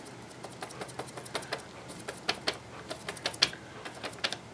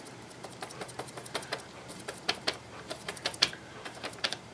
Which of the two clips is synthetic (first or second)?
second